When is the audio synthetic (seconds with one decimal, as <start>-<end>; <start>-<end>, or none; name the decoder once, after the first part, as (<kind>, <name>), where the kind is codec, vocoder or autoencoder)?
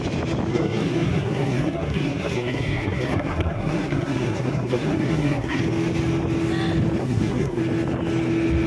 0.5-5.6 (codec, SNAC); 7.0-7.6